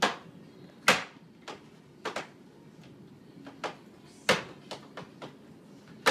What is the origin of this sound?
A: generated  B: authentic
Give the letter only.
B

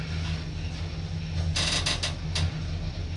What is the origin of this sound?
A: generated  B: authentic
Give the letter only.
B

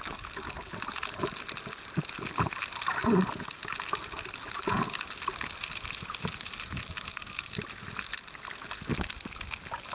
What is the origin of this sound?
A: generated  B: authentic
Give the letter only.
B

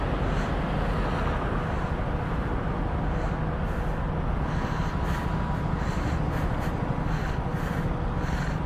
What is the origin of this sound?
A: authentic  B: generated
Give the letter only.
A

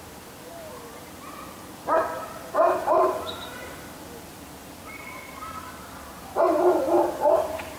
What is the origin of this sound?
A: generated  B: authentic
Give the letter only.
A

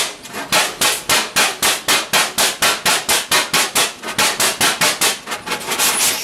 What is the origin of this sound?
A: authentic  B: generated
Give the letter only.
A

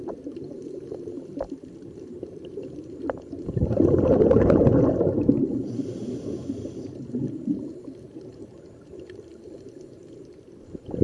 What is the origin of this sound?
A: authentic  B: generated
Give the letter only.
B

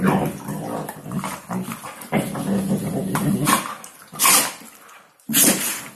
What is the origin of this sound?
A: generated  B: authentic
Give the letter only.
B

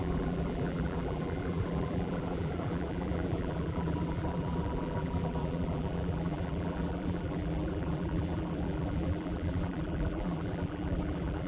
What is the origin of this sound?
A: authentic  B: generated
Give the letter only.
B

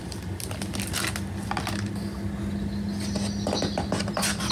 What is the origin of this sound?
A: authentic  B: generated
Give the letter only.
A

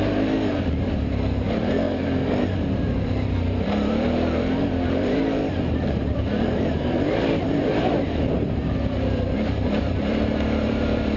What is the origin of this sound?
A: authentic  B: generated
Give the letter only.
B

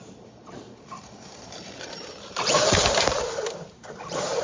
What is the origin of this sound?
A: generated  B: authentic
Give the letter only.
A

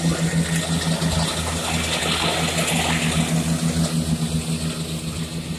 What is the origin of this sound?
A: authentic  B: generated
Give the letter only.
A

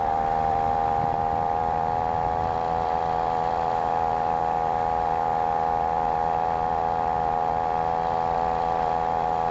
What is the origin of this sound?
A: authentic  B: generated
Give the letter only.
B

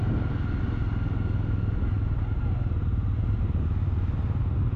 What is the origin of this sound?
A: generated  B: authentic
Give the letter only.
B